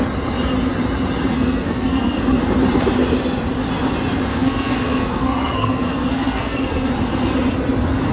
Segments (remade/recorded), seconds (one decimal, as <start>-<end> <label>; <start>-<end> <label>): 0.0-1.3 recorded; 1.3-2.4 remade; 2.4-4.3 recorded; 4.3-6.9 remade; 6.9-8.1 recorded